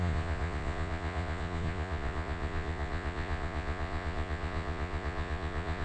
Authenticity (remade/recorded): remade